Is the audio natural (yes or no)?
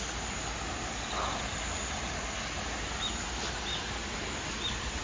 yes